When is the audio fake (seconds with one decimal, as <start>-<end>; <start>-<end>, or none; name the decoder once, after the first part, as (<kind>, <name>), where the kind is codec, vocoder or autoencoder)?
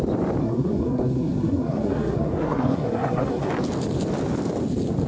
0.4-3.5 (codec, SNAC)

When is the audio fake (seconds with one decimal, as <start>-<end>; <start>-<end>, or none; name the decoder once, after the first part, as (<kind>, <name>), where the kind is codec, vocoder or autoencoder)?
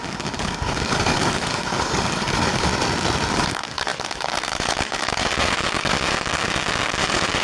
0.0-2.7 (codec, DAC); 3.3-7.4